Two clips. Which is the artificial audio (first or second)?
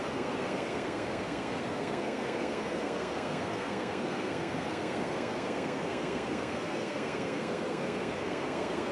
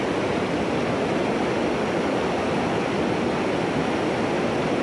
first